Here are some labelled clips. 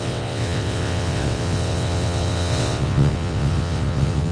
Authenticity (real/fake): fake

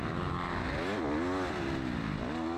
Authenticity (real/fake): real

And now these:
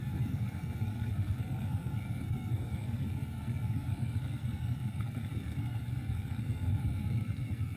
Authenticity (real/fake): fake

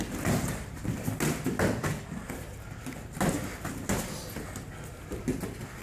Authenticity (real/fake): real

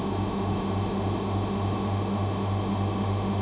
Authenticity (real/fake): fake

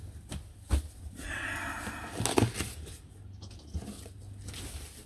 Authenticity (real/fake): real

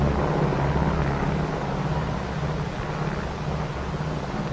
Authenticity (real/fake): real